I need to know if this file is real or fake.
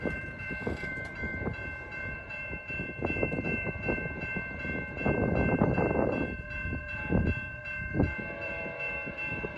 fake